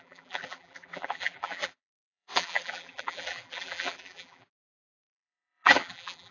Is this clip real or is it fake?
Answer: fake